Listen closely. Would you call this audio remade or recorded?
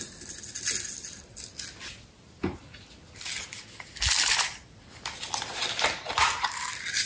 recorded